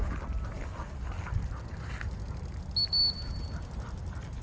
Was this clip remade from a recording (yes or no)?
no